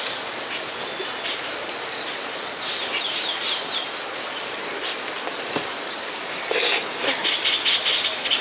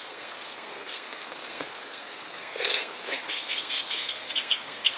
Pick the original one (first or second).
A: first